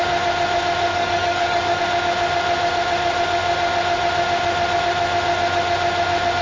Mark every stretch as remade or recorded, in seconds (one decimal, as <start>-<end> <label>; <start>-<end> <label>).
0.0-0.9 recorded; 0.9-1.8 remade; 1.8-6.4 recorded